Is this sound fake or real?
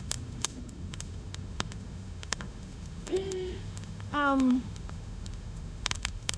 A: fake